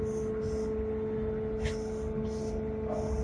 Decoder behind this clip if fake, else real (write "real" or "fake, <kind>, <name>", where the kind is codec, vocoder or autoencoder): real